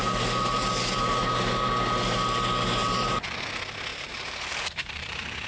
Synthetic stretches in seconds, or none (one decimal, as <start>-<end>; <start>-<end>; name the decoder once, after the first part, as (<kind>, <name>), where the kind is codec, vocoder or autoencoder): 0.0-1.7 (vocoder, BigVGAN v2); 2.8-3.4; 3.9-5.5